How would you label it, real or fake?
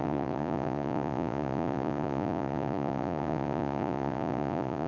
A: fake